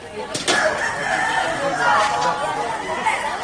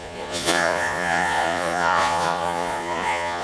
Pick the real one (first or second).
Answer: first